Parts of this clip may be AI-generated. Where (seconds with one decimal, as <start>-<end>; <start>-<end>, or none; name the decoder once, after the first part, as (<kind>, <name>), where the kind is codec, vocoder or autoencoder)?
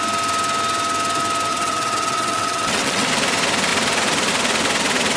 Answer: 1.5-3.1 (vocoder, WaveNeXt)